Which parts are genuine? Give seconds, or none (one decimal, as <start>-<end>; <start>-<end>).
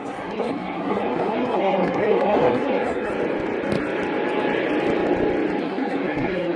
3.1-5.6